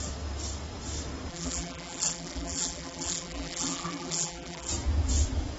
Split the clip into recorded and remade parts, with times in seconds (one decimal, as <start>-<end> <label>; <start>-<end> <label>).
0.0-1.3 recorded; 1.3-4.7 remade; 4.7-5.6 recorded